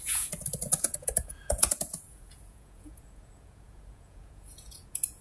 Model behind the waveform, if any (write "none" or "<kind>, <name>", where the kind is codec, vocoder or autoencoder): vocoder, Vocos